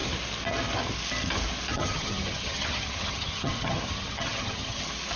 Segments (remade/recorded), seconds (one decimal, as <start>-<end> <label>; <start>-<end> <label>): 0.0-1.7 recorded; 1.7-4.8 remade; 4.8-5.2 recorded